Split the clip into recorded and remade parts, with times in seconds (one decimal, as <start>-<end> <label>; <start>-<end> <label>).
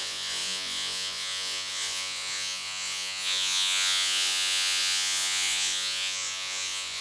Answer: 0.0-7.0 remade